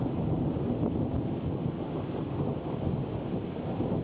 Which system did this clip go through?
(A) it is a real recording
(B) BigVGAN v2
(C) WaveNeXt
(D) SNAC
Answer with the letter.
A